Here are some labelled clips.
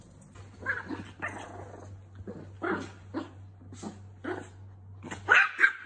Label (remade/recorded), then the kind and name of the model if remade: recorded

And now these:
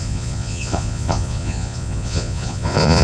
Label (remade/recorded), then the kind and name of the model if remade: remade, vocoder, Vocos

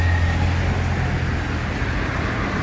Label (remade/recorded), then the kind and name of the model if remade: recorded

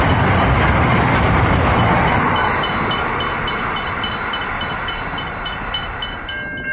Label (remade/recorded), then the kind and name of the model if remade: recorded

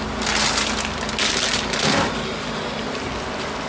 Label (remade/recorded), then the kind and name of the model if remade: recorded